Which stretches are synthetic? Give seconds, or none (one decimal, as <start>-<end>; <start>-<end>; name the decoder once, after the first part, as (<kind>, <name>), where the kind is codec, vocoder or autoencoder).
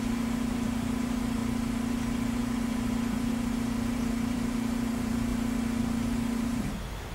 0.0-1.4 (vocoder, BigVGAN v2); 1.9-5.3; 5.8-7.1